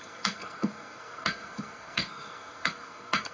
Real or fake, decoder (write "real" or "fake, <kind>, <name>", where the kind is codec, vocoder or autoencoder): fake, codec, SNAC